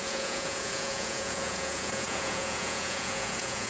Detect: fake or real fake